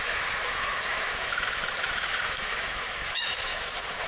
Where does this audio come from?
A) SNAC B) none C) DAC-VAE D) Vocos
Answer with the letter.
C